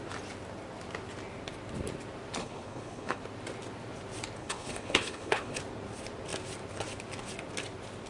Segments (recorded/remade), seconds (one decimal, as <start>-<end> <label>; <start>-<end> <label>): 0.0-2.4 recorded; 2.4-3.2 remade; 3.2-4.4 recorded; 4.4-5.6 remade; 5.6-8.1 recorded